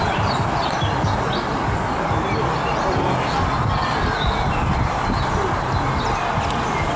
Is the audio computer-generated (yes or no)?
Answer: no